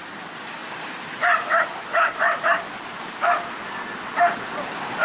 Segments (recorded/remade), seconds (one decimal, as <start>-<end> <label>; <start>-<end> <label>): 0.0-5.0 recorded